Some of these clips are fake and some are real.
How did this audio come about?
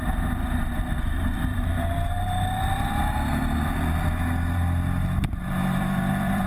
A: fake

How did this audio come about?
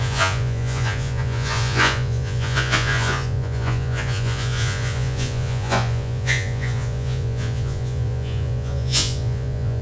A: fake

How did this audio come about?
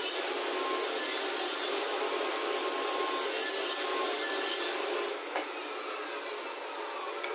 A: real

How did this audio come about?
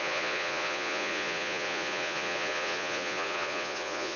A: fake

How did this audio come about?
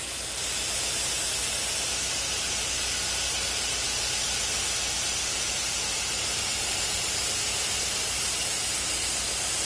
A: real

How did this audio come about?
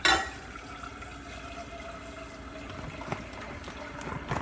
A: real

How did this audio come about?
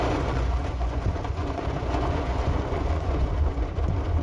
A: fake